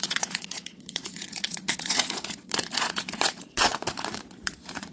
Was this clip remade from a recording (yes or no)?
yes